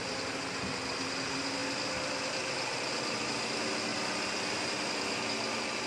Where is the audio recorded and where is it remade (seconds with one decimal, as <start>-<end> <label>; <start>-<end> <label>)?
0.0-1.6 recorded; 1.6-2.9 remade; 2.9-5.9 recorded